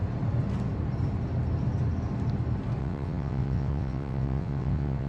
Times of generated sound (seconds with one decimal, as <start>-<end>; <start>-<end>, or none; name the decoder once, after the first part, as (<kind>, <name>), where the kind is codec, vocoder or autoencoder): 2.8-5.1 (vocoder, WaveNeXt)